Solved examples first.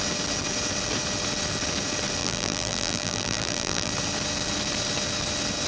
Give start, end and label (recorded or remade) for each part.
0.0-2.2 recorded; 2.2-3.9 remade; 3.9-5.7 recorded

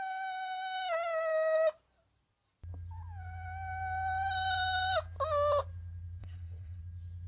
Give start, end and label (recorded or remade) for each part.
0.0-6.2 recorded; 6.2-6.8 remade; 6.8-7.3 recorded

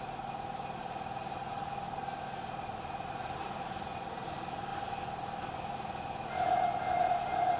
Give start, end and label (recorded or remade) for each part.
0.0-7.6 recorded